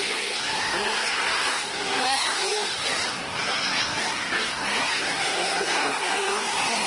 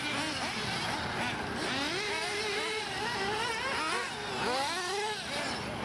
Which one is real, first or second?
second